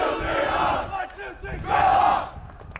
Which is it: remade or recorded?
recorded